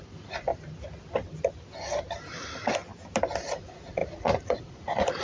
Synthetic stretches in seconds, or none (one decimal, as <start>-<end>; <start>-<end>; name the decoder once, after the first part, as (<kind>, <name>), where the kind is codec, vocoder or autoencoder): 0.0-0.5 (vocoder, Vocos); 3.6-5.2